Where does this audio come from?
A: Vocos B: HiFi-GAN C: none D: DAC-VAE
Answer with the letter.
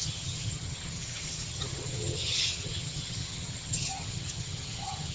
B